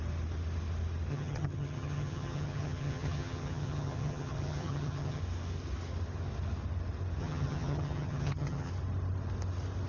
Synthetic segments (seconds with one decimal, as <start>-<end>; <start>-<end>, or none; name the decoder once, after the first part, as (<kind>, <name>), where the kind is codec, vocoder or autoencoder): 1.1-5.2 (vocoder, HiFi-GAN); 7.2-8.7